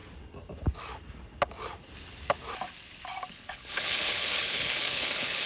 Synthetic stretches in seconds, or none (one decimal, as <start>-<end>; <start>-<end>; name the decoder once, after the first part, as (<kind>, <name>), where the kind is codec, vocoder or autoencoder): 3.3-5.5 (codec, HILCodec)